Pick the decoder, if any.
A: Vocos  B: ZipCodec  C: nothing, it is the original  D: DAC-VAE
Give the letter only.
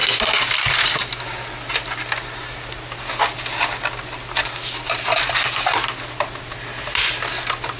C